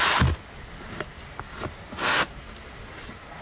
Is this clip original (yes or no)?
yes